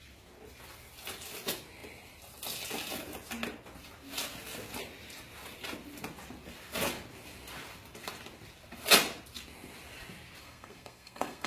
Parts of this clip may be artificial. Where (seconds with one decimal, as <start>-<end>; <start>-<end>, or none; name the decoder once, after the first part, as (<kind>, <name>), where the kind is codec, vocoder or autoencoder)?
10.4-11.5 (codec, SNAC)